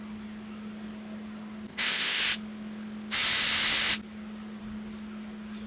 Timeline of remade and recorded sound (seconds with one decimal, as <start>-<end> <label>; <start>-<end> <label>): 0.0-1.7 recorded; 1.7-2.2 remade; 2.2-5.7 recorded